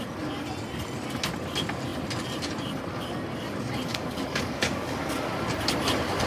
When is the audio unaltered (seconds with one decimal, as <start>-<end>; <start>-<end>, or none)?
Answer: 0.0-3.9; 5.3-6.3